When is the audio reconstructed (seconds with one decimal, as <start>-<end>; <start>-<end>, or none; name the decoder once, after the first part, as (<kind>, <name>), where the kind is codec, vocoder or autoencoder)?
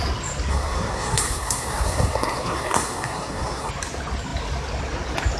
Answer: 0.5-3.7 (codec, SNAC)